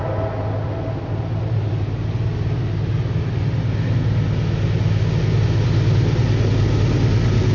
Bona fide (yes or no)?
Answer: yes